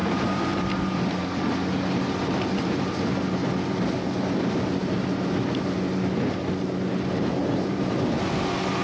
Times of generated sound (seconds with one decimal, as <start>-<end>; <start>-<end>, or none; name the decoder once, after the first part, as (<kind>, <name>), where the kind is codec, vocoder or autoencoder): 0.0-1.0 (vocoder, BigVGAN v2); 7.4-8.2